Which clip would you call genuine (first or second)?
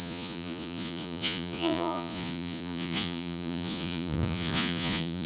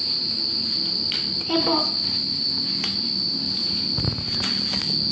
second